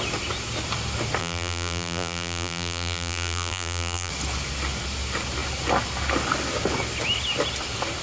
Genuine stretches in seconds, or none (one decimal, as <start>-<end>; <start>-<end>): 0.0-1.2; 4.1-8.0